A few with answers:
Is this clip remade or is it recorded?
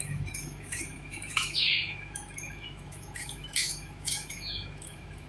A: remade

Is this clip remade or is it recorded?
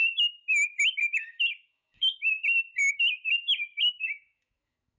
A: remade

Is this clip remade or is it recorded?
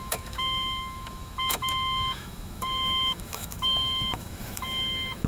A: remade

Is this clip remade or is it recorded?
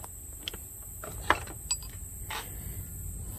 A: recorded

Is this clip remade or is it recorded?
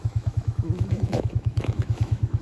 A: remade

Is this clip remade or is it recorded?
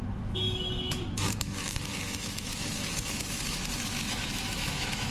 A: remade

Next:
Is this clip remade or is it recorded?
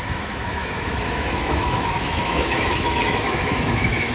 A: remade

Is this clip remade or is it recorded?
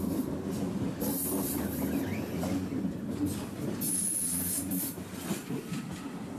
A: recorded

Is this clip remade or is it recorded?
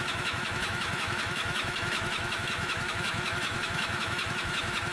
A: remade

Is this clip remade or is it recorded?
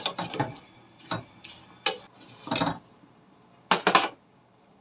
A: recorded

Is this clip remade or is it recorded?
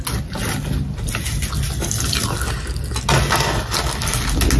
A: recorded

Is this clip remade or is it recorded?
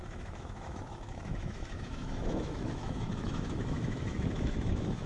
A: remade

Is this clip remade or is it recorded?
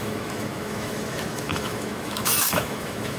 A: remade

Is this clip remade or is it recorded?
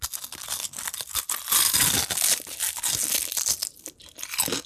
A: recorded